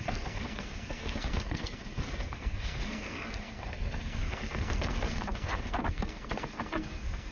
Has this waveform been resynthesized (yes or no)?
yes